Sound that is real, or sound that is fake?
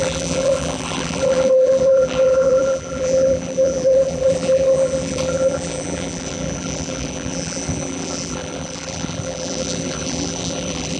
fake